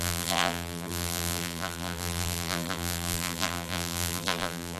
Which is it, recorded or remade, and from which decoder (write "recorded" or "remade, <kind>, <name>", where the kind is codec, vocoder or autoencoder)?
remade, vocoder, BigVGAN v2